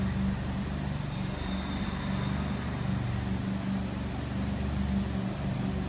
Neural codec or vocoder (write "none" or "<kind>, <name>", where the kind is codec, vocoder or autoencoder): none